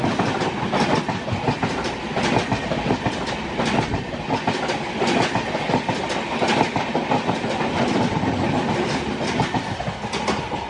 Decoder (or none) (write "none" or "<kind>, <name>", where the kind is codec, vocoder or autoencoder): none